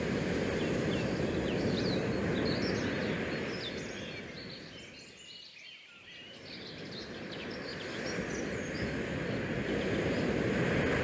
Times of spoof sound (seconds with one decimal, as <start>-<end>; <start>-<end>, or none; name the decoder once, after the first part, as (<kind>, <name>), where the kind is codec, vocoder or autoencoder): none